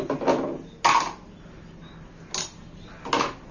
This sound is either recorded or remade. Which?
recorded